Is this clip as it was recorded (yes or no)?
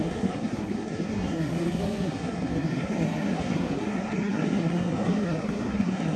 no